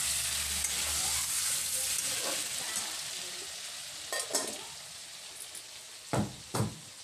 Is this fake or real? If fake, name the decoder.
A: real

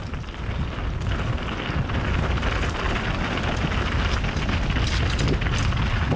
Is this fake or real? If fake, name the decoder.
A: real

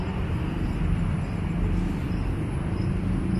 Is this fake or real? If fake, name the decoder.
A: real